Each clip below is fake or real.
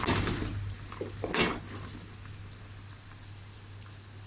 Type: real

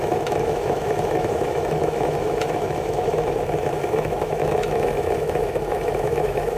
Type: fake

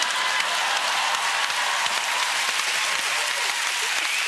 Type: real